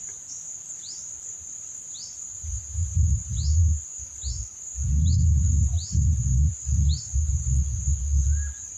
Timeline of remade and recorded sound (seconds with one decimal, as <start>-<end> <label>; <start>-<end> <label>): 0.0-8.8 recorded